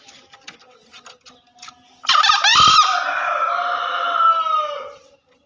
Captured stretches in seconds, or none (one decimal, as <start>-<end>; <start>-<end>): 0.0-5.5